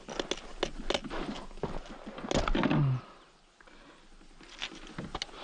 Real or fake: real